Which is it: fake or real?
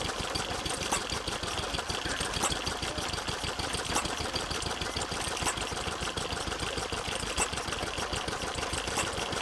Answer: real